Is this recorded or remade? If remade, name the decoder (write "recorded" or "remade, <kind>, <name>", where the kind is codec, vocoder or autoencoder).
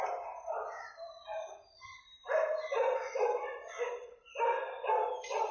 recorded